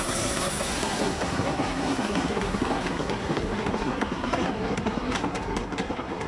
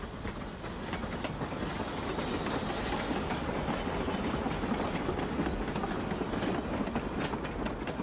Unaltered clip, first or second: second